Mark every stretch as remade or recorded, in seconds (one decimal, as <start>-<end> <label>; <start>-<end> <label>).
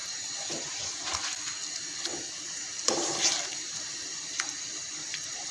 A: 0.0-1.1 remade; 1.1-2.1 recorded; 2.1-5.5 remade